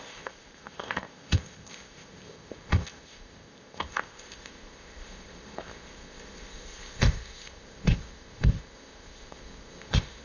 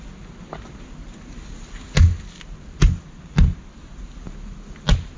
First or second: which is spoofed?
first